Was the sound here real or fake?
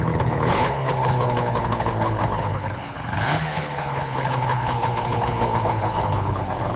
fake